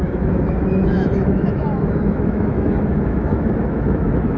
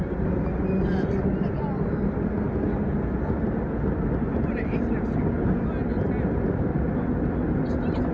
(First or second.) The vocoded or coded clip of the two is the first